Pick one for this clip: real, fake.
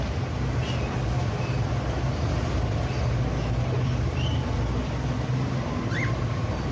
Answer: real